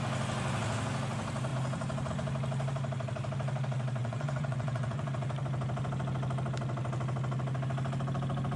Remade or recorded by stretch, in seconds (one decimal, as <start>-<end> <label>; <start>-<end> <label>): 0.0-4.0 recorded; 4.0-5.1 remade; 5.1-8.6 recorded